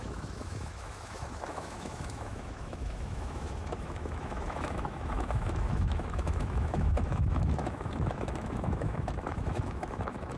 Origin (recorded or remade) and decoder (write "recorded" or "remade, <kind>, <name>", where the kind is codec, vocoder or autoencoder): remade, autoencoder, DAC-VAE